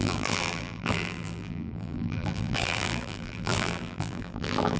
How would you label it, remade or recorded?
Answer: remade